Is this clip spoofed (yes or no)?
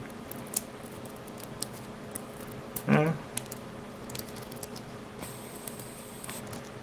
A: no